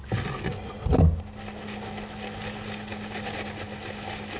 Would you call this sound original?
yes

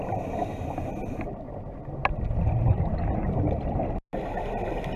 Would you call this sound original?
yes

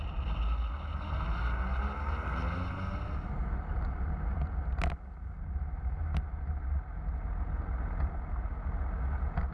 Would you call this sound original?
yes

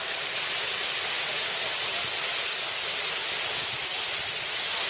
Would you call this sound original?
yes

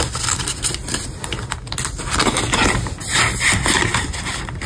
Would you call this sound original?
yes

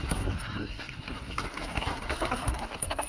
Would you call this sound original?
no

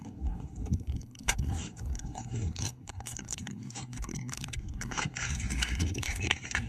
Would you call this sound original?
no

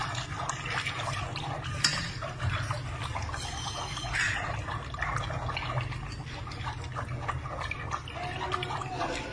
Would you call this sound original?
yes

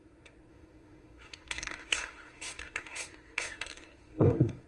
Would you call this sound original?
no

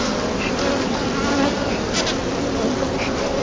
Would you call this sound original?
yes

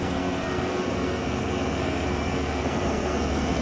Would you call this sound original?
no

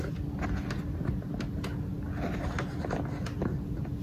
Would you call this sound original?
yes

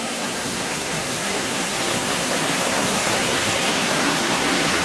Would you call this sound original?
no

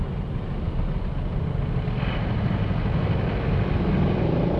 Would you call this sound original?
yes